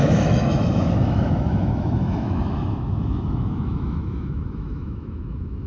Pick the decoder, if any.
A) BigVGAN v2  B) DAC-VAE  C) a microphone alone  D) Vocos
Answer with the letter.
B